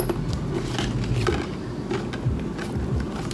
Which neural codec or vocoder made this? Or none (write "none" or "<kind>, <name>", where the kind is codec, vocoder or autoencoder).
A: none